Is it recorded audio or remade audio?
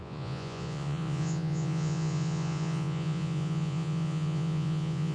remade